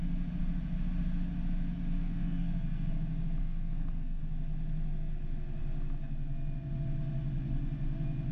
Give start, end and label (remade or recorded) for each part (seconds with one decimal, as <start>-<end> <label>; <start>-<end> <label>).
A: 0.0-2.0 recorded; 2.0-2.9 remade; 2.9-3.4 recorded; 3.4-4.2 remade; 4.2-8.3 recorded